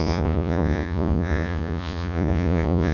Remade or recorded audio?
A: remade